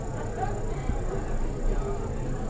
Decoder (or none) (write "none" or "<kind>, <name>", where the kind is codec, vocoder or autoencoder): none